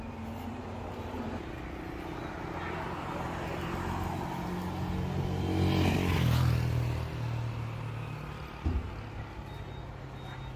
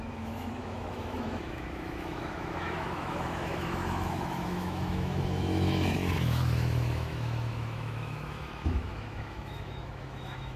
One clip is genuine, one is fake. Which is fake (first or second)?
second